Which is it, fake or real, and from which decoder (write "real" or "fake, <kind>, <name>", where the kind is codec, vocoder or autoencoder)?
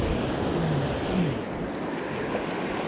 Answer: real